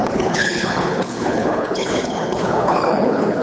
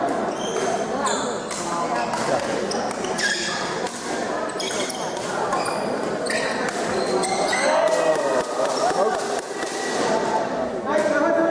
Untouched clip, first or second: second